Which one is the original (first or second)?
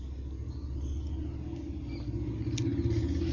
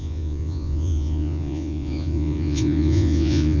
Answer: first